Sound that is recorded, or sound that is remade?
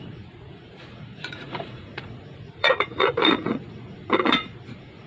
remade